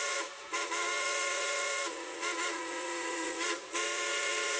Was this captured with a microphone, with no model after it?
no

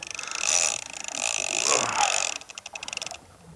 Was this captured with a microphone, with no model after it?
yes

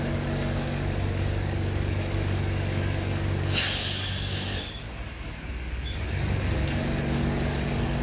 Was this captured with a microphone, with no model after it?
no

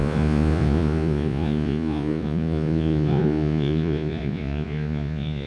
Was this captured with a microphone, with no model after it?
no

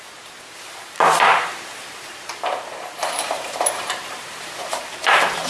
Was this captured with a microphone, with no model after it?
no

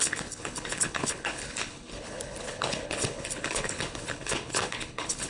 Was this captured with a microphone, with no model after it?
no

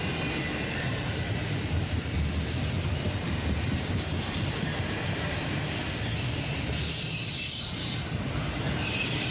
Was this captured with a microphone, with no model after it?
no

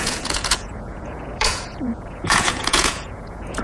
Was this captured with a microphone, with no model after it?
no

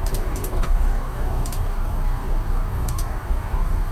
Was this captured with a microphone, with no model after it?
no